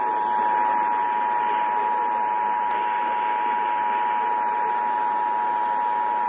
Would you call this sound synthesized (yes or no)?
no